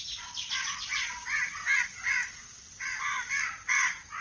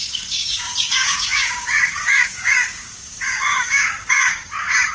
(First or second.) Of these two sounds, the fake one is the second